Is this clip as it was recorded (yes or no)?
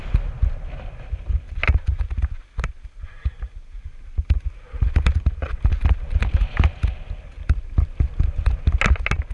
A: yes